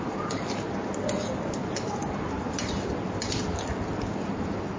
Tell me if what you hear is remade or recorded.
recorded